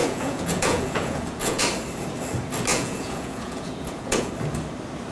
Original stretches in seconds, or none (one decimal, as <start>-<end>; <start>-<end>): 1.6-2.7; 4.3-5.1